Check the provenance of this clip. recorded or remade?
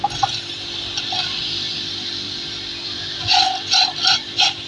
recorded